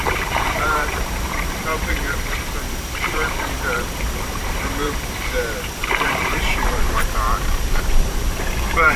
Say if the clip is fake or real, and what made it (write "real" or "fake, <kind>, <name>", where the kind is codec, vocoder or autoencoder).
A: fake, vocoder, BigVGAN v2